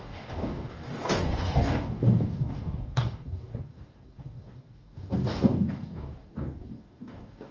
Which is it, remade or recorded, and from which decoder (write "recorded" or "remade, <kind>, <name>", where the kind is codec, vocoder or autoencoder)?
remade, codec, DAC